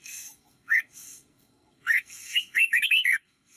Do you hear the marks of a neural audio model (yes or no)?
yes